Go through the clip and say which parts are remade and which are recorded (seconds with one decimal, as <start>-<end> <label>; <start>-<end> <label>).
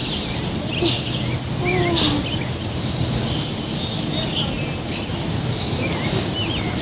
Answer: 0.0-5.1 recorded; 5.1-6.8 remade